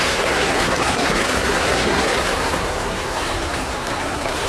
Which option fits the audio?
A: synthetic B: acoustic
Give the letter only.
A